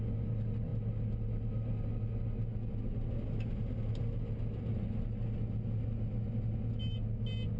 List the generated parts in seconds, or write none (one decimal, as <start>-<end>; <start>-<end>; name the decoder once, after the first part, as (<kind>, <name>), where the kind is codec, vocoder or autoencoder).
none